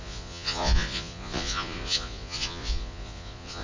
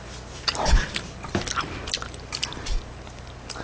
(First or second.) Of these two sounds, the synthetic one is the first